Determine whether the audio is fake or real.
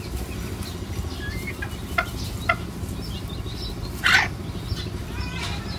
real